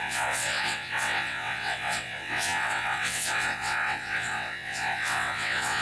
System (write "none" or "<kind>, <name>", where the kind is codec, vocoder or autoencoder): vocoder, WaveNeXt